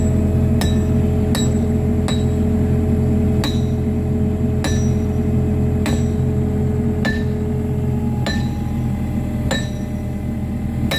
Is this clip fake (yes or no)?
no